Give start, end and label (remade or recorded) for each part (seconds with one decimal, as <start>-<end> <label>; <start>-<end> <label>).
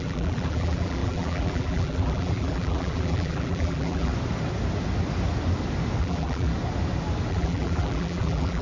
0.0-4.1 remade; 4.1-6.0 recorded; 6.0-6.5 remade; 6.5-7.3 recorded; 7.3-8.6 remade